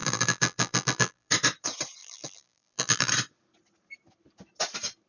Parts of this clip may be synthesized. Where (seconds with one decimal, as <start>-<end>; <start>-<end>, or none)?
0.0-1.3; 2.0-3.1